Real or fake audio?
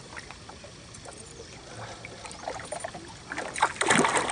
real